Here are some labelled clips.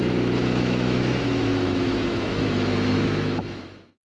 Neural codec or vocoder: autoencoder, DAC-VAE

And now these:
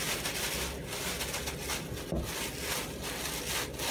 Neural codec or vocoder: none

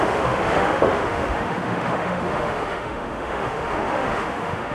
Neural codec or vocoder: autoencoder, DAC-VAE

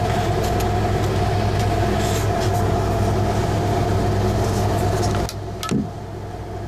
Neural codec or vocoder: none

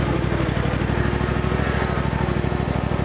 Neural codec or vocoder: none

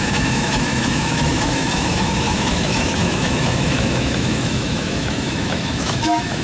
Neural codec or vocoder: autoencoder, DAC-VAE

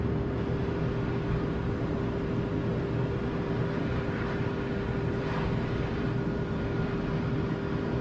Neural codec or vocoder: none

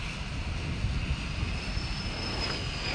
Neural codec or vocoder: none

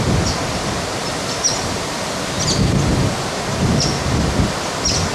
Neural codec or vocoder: none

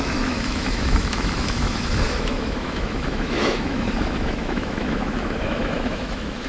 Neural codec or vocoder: autoencoder, DAC-VAE